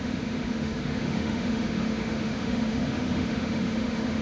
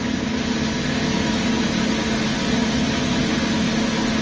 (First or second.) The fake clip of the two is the first